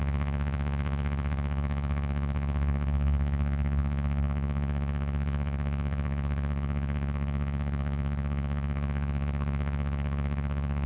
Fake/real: fake